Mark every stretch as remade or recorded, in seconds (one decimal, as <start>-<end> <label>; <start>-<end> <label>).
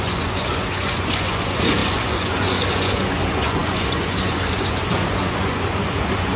0.0-6.4 remade